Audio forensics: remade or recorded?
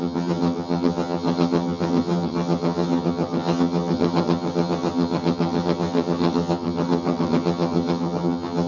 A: remade